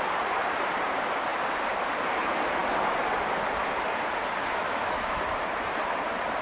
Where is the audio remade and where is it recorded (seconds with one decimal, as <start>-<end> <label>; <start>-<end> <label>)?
0.0-4.4 recorded; 4.4-5.2 remade; 5.2-6.4 recorded